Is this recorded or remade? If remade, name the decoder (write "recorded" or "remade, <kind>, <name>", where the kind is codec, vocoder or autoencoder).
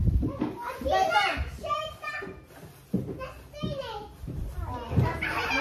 recorded